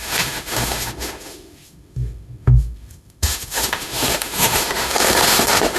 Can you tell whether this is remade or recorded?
remade